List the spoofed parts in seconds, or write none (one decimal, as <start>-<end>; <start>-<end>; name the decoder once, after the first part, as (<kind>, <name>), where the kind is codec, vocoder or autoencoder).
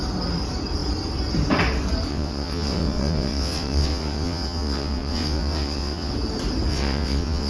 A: 2.1-6.1 (vocoder, WaveNeXt); 6.7-7.5